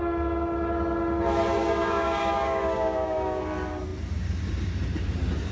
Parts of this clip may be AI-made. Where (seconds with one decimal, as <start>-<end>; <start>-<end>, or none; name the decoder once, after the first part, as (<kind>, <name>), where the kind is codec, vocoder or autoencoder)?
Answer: 1.6-3.4 (codec, DAC)